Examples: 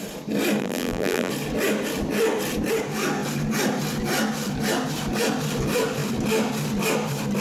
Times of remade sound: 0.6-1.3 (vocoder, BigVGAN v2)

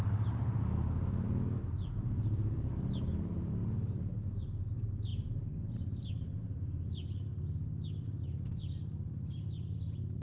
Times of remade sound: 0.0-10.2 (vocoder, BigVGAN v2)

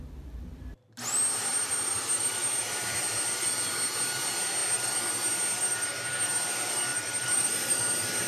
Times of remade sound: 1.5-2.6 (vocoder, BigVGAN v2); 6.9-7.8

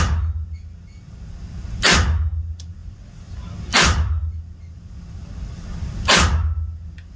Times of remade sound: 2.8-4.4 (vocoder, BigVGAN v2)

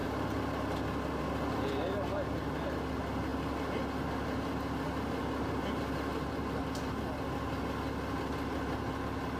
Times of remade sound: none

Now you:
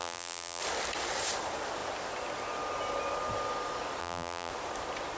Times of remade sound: 0.0-0.6 (vocoder, BigVGAN v2); 4.0-4.5

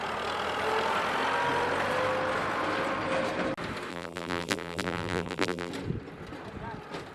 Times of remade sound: 3.9-5.7 (vocoder, BigVGAN v2)

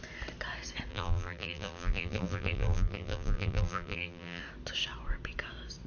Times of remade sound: 0.9-4.4 (vocoder, BigVGAN v2)